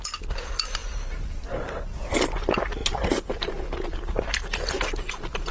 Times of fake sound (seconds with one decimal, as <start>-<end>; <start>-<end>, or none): 0.8-1.8; 2.8-3.5